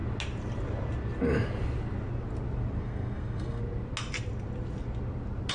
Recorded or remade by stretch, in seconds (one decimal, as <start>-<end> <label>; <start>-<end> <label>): 0.0-2.8 recorded; 2.8-3.6 remade; 3.6-5.5 recorded